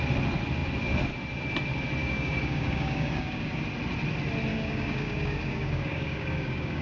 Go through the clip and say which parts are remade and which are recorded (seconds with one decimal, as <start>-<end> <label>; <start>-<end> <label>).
0.0-2.0 recorded; 2.0-3.6 remade; 3.6-4.5 recorded; 4.5-6.8 remade